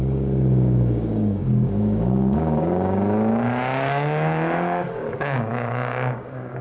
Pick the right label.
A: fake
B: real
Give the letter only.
A